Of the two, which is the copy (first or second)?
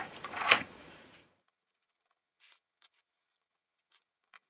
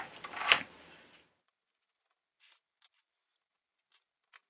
first